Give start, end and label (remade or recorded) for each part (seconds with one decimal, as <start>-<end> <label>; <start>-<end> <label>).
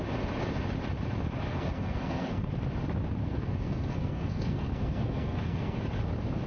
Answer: 0.0-1.5 recorded; 1.5-2.5 remade; 2.5-3.2 recorded; 3.2-5.8 remade; 5.8-6.5 recorded